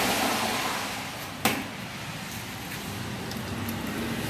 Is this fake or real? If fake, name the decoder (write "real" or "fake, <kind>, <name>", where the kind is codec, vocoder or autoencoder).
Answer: real